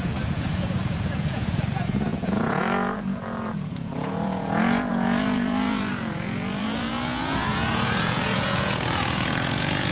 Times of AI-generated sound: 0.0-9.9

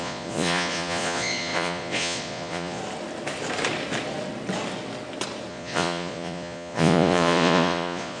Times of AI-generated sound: 0.0-2.8; 5.5-8.2

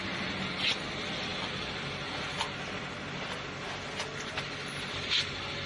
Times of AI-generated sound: none

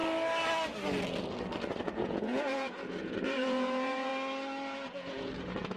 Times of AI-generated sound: 1.8-4.1; 4.9-5.8

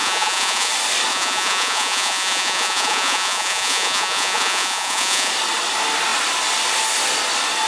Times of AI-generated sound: 0.0-0.7; 1.1-5.3

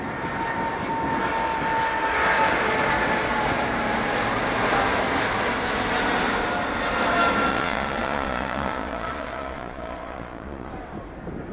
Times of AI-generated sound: 7.5-10.7